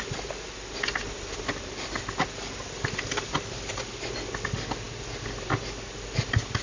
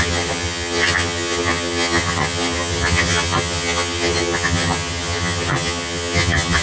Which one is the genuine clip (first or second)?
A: first